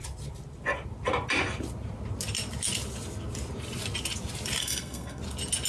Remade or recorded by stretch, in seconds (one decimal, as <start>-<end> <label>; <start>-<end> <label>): 0.0-4.6 recorded; 4.6-5.2 remade; 5.2-5.7 recorded